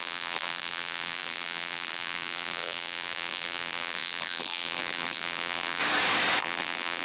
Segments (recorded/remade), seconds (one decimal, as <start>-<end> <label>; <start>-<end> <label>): 0.0-5.8 remade; 5.8-6.4 recorded; 6.4-7.0 remade